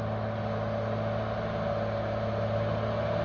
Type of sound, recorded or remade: recorded